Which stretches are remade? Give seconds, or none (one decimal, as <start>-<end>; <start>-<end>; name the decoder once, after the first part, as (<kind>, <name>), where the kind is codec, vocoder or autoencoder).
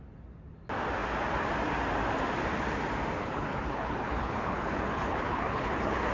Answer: 3.2-6.1 (codec, HILCodec)